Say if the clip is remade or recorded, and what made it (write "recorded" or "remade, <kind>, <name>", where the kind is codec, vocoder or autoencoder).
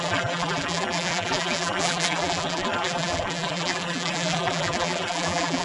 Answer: remade, vocoder, BigVGAN v2